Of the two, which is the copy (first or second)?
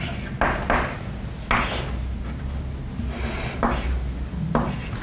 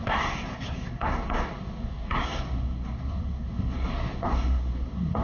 second